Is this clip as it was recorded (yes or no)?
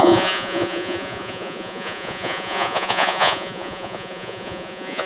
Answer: no